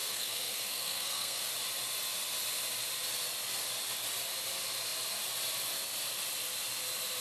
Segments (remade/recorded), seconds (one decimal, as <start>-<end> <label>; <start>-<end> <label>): 0.0-1.5 remade; 1.5-7.2 recorded